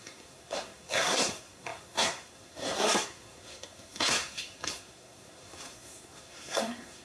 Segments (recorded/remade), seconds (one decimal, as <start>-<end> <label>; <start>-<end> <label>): 0.0-7.0 remade